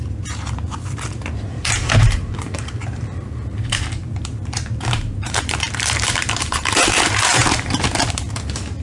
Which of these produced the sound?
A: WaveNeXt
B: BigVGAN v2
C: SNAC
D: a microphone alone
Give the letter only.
B